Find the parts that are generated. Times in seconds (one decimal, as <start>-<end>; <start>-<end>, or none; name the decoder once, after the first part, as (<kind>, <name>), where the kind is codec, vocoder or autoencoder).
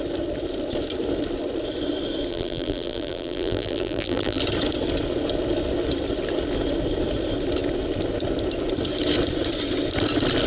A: 2.3-4.4 (vocoder, BigVGAN v2)